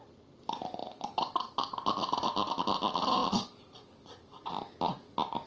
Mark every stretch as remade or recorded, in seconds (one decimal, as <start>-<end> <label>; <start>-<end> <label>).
0.0-5.5 recorded